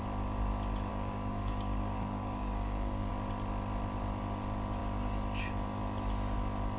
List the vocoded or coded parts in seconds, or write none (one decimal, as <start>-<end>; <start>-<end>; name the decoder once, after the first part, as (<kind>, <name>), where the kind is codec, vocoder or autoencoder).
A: 0.9-3.1 (codec, DAC)